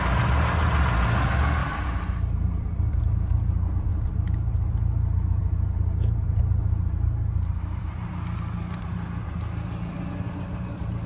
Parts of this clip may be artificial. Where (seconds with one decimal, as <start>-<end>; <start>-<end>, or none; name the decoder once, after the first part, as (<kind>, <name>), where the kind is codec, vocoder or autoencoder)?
1.6-3.0 (vocoder, BigVGAN v2); 3.9-4.7; 5.4-8.1